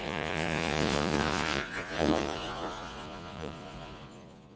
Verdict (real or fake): fake